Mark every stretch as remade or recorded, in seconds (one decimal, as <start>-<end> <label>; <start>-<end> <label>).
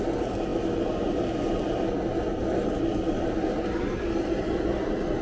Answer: 0.0-5.2 recorded